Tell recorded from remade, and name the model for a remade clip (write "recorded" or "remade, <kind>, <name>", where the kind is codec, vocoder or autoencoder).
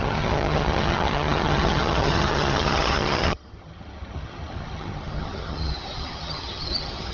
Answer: remade, vocoder, HiFi-GAN